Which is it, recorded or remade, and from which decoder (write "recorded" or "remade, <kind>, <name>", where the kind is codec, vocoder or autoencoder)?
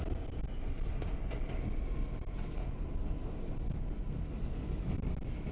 recorded